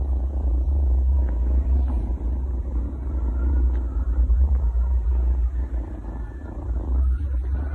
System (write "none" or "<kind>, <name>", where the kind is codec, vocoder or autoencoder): vocoder, BigVGAN v2